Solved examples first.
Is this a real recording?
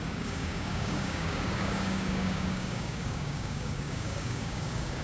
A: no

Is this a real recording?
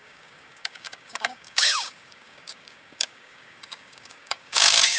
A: no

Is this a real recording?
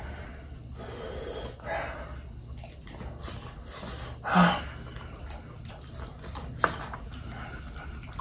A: yes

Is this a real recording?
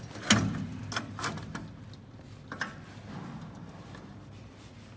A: yes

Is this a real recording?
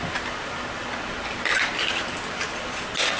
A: yes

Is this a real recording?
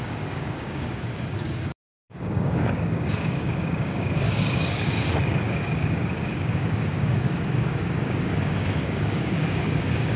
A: no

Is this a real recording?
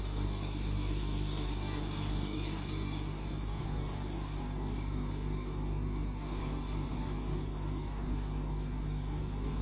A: no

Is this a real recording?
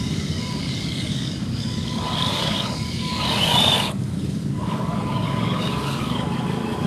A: no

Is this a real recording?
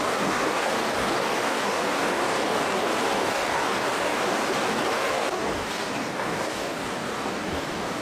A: no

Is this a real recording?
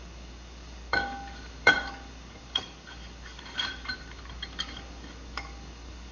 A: no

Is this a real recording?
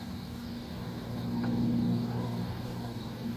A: no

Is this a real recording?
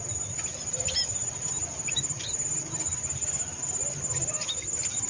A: yes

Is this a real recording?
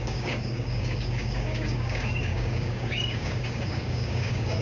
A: no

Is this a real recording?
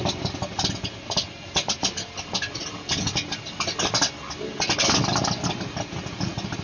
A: yes